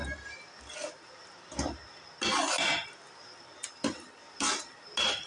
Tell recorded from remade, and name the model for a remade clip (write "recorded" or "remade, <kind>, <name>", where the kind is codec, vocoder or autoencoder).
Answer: recorded